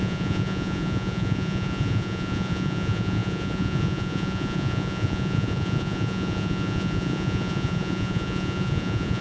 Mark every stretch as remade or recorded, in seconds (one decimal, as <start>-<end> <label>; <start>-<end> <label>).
0.0-9.2 remade